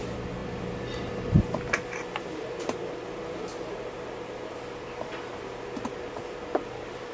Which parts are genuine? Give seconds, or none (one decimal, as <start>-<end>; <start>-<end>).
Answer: 0.0-7.1

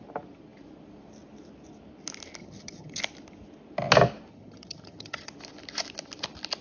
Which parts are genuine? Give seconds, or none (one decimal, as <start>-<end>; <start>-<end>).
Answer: 0.0-2.4; 3.0-4.3; 5.3-6.6

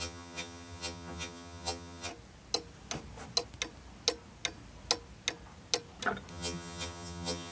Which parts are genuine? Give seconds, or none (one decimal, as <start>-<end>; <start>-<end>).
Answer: 2.1-6.3

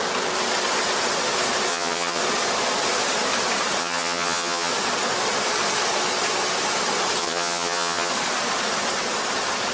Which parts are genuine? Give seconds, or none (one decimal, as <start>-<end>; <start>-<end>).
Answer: 0.0-1.7; 2.2-3.8; 4.7-7.2; 8.1-9.7